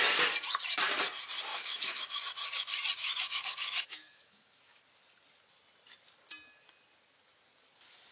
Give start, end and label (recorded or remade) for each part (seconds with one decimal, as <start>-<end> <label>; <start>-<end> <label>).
0.0-1.5 recorded; 1.5-2.2 remade; 2.2-3.0 recorded; 3.0-4.8 remade; 4.8-8.1 recorded